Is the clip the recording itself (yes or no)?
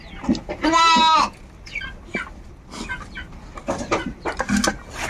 yes